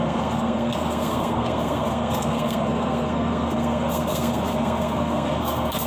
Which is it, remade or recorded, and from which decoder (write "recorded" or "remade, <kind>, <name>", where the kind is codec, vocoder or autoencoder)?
remade, codec, SNAC